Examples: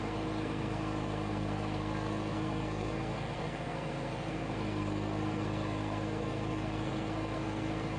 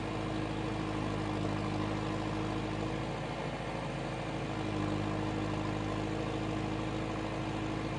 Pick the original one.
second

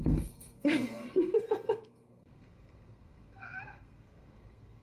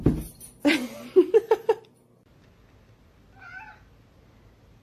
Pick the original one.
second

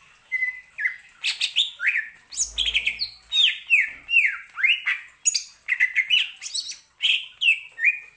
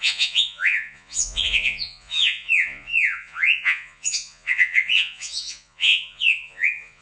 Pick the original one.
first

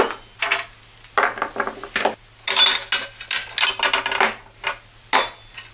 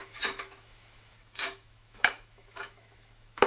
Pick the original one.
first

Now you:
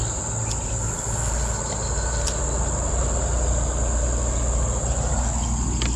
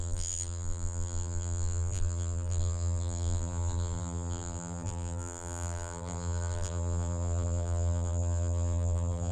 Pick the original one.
first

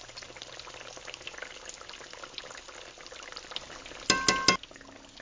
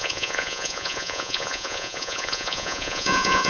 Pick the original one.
first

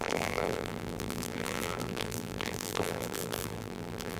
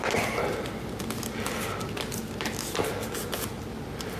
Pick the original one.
second